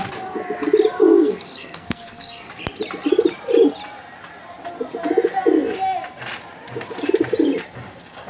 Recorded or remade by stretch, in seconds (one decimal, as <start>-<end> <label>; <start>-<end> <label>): 0.0-1.0 recorded; 1.0-2.5 remade; 2.5-8.3 recorded